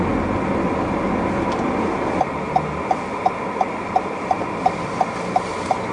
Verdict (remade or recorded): recorded